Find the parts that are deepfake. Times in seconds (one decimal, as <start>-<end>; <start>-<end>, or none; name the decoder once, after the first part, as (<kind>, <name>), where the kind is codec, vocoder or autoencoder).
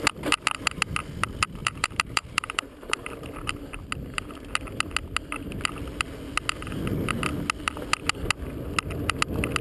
1.6-3.3 (vocoder, BigVGAN v2)